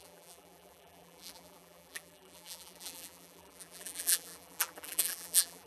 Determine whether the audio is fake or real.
fake